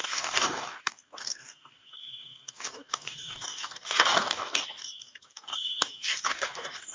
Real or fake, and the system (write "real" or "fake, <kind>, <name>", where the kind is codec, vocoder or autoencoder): fake, codec, DAC